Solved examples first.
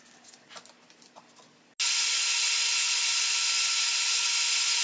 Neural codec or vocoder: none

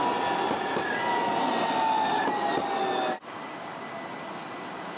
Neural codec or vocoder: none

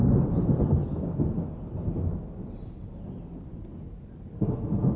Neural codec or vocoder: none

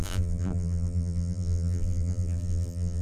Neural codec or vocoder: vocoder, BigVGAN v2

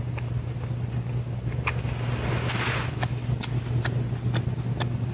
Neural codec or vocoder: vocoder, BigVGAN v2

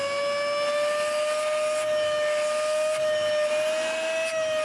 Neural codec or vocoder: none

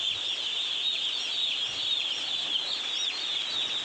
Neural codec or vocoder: none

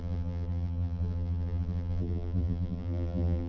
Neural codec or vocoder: vocoder, BigVGAN v2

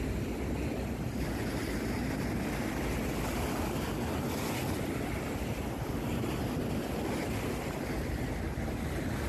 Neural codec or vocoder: none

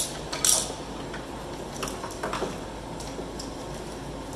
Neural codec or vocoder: none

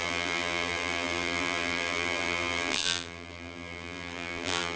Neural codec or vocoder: vocoder, BigVGAN v2